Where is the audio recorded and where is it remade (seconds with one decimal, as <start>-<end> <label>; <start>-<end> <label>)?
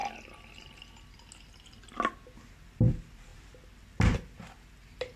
0.0-5.2 recorded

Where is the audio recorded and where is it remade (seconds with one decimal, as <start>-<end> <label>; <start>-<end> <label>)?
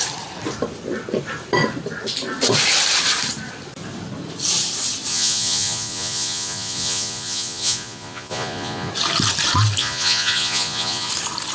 0.0-5.1 recorded; 5.1-8.9 remade; 8.9-9.8 recorded; 9.8-11.1 remade; 11.1-11.5 recorded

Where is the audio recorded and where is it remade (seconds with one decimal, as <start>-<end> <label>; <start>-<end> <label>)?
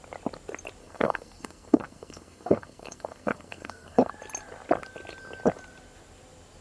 0.0-0.8 recorded; 0.8-4.1 remade; 4.1-6.6 recorded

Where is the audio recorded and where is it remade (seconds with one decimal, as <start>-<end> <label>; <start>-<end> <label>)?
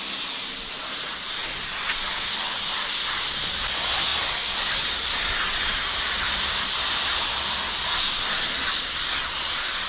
0.0-4.1 recorded; 4.1-7.7 remade; 7.7-9.9 recorded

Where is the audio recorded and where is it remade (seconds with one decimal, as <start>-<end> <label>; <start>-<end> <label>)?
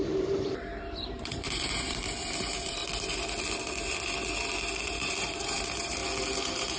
0.0-2.8 remade; 2.8-4.8 recorded; 4.8-6.0 remade; 6.0-6.8 recorded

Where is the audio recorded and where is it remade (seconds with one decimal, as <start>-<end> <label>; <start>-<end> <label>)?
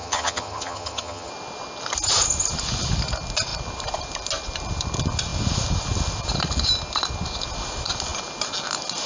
0.0-1.3 remade; 1.3-9.1 recorded